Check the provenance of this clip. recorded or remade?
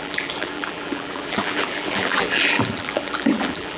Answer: remade